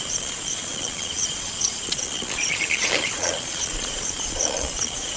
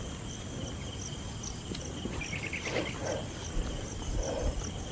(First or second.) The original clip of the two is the second